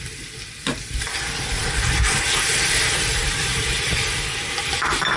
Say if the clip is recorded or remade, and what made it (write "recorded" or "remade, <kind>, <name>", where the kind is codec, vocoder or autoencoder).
remade, vocoder, BigVGAN v2